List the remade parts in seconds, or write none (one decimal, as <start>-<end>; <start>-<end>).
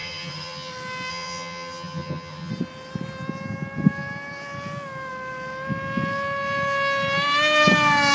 0.0-0.7; 1.1-2.5